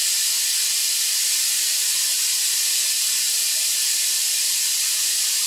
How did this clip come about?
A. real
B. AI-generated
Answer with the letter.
A